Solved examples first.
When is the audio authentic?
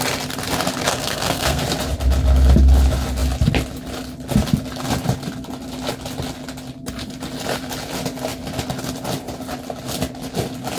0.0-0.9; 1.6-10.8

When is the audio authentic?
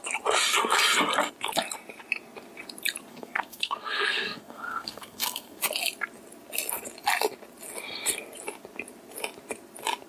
0.0-3.1; 5.6-10.1